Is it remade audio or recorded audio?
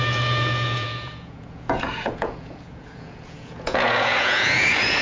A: remade